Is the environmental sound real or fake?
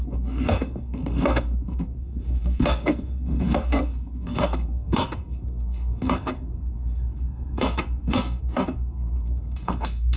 fake